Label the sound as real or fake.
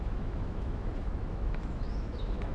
fake